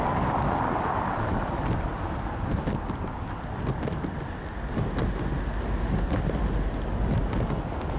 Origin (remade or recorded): recorded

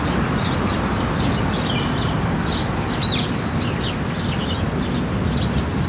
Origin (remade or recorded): recorded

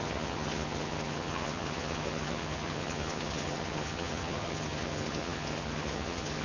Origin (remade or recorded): remade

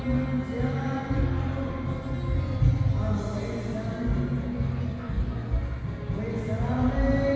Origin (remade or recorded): recorded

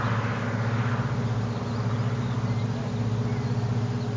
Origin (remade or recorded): recorded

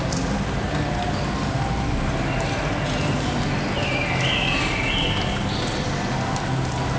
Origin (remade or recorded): recorded